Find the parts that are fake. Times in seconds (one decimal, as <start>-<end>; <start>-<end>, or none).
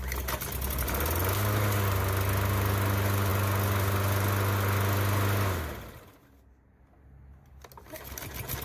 none